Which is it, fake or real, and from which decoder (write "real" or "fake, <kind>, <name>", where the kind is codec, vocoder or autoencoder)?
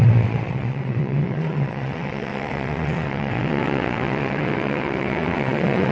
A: fake, vocoder, WaveNeXt